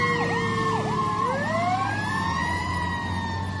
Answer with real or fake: real